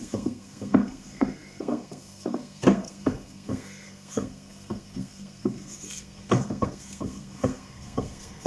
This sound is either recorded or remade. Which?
remade